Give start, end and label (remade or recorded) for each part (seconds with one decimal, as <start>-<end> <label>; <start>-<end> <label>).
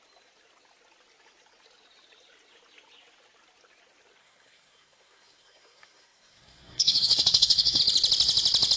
0.0-4.2 recorded; 4.2-7.8 remade; 7.8-8.8 recorded